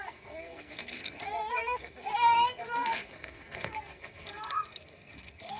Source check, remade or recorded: remade